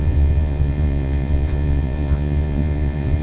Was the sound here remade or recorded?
remade